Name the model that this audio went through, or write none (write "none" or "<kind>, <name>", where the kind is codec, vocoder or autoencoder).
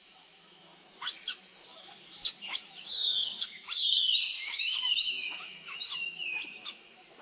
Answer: autoencoder, DAC-VAE